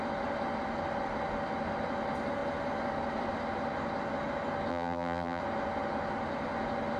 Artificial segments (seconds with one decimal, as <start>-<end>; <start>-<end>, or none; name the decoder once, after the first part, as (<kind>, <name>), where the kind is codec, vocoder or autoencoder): 4.7-5.4 (vocoder, BigVGAN v2)